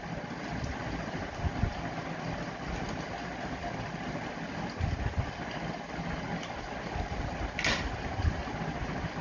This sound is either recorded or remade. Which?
recorded